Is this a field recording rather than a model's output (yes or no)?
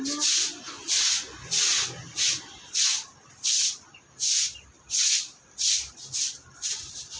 yes